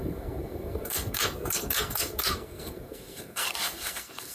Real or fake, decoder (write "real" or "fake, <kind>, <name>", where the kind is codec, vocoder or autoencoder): fake, codec, SNAC